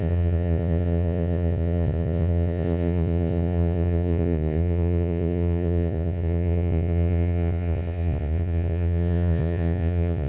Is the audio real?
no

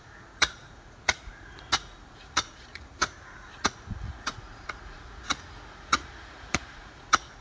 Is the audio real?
no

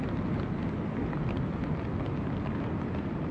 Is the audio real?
yes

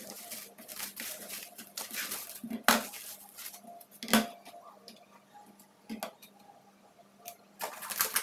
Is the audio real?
yes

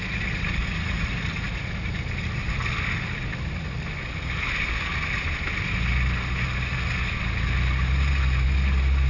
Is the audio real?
yes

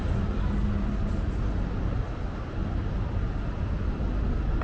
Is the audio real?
yes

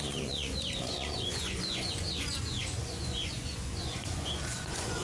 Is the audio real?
no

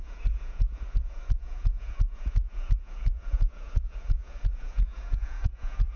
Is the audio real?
no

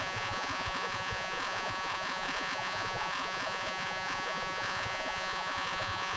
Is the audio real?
no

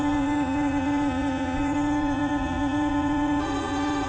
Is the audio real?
no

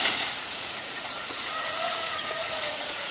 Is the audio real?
no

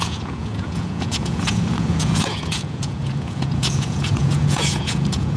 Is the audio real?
no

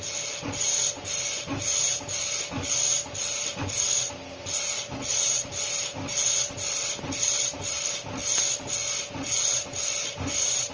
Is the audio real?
yes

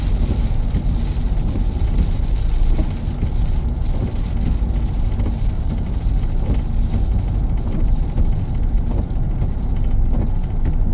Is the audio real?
yes